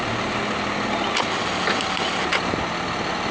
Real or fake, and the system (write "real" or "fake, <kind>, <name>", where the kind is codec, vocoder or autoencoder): real